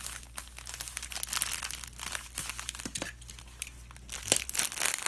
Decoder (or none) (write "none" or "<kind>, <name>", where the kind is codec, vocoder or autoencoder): none